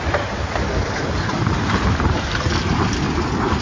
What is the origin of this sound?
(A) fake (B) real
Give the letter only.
A